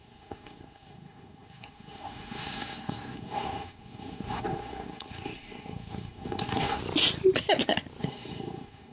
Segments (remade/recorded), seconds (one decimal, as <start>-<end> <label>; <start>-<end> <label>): 0.0-6.8 remade; 6.8-8.0 recorded; 8.0-8.9 remade